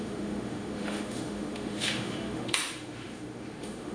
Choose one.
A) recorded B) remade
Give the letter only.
B